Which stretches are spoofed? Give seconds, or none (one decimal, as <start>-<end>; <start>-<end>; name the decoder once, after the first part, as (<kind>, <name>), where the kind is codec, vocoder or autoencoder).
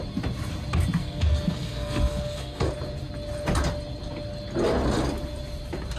1.0-2.7 (codec, SNAC)